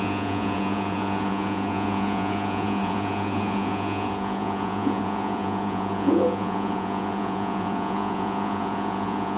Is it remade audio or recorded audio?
remade